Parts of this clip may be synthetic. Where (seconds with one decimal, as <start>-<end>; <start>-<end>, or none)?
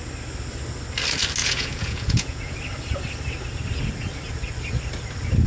1.4-2.5